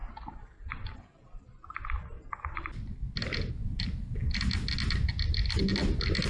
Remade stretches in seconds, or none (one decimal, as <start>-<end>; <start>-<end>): none